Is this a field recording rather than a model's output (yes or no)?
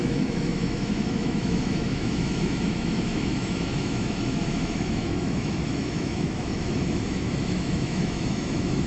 no